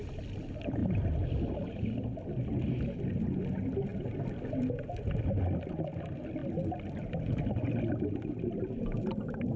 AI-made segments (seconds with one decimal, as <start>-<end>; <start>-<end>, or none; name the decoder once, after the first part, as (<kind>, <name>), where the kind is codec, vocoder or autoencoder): none